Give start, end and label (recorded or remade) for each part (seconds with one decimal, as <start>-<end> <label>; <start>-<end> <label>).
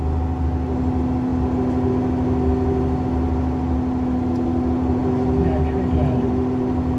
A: 0.0-7.0 recorded